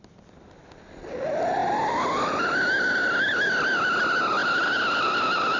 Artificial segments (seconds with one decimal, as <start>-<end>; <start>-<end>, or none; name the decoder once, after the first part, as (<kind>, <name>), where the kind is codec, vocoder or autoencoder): 1.6-4.0 (vocoder, BigVGAN v2); 4.4-5.6